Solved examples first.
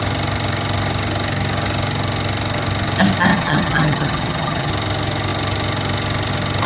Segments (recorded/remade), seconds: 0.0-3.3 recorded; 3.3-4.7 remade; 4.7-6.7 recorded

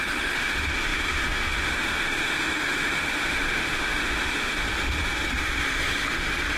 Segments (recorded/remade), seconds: 0.0-4.7 remade; 4.7-6.6 recorded

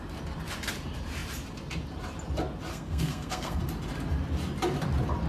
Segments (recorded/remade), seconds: 0.0-2.7 recorded; 2.7-3.6 remade; 3.6-5.3 recorded

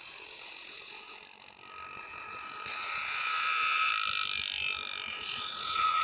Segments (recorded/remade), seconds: 0.0-1.2 remade; 1.2-2.0 recorded; 2.0-3.9 remade; 3.9-5.1 recorded; 5.1-6.0 remade